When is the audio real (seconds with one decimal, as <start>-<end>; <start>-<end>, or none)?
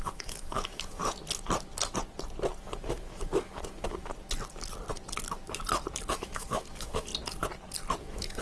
1.0-2.6; 4.1-6.1; 7.1-8.0